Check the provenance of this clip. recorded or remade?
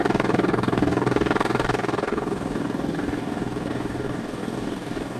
remade